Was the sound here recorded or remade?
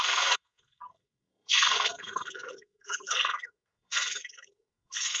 remade